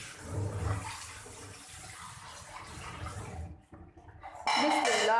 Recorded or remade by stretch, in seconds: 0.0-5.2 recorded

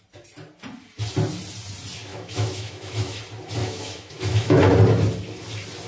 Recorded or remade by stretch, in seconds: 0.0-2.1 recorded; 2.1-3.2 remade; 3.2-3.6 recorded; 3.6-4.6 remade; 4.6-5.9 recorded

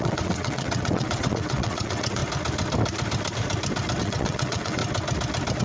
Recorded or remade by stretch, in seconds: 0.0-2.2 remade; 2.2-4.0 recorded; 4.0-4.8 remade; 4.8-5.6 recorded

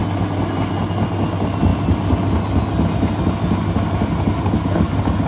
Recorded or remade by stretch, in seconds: 0.0-5.3 recorded

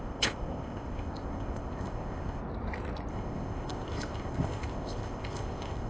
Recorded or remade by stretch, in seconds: 0.0-2.4 remade; 2.4-3.1 recorded; 3.1-5.9 remade